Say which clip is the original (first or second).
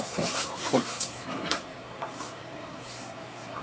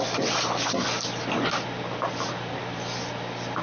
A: second